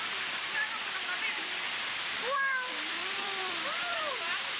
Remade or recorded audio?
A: remade